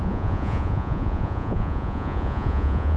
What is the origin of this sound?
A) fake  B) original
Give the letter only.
A